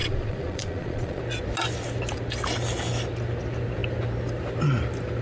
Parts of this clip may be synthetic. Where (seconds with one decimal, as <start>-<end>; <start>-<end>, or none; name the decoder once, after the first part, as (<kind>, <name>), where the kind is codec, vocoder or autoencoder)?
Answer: 0.0-1.2 (vocoder, Vocos)